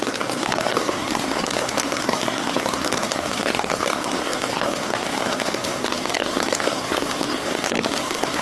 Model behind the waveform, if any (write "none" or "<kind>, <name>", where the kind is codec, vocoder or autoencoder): codec, SNAC